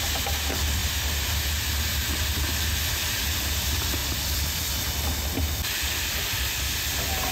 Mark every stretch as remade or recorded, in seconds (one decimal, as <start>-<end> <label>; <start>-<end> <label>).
0.0-7.3 recorded